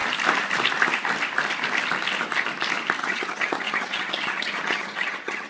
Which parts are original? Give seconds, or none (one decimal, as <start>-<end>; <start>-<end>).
0.0-3.0